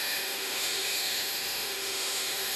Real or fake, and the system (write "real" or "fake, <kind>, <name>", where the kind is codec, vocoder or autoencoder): fake, autoencoder, DAC-VAE